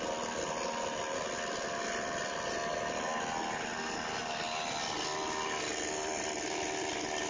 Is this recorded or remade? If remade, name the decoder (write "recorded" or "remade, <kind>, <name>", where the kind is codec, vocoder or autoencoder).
recorded